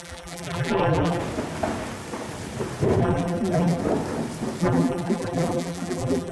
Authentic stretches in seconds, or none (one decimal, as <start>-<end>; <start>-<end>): 1.2-3.0; 3.8-4.6